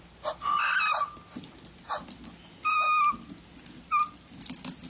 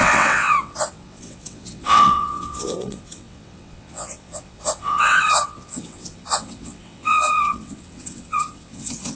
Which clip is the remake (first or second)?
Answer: second